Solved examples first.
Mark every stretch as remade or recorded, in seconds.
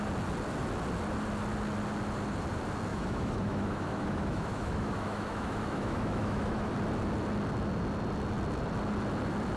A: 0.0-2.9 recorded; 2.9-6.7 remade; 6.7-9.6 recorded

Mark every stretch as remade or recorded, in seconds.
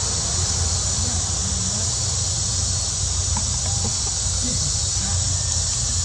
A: 0.0-6.0 recorded